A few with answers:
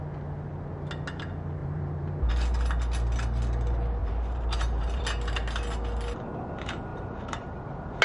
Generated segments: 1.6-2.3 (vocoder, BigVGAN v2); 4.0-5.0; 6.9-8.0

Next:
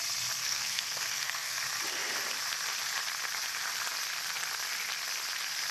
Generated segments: 0.4-1.6 (codec, SNAC)

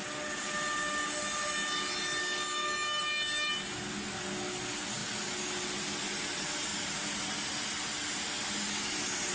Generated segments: 2.2-3.0 (codec, DAC)

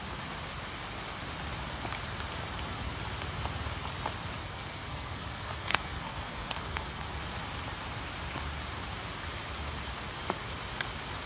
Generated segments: 4.4-7.2 (codec, SNAC)

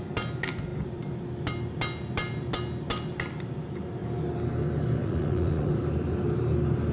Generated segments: 5.0-5.7 (vocoder, Vocos)

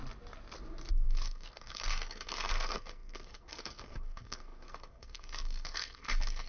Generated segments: 0.9-6.5 (codec, SNAC)

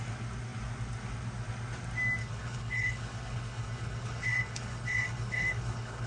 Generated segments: 2.2-6.1 (codec, HILCodec)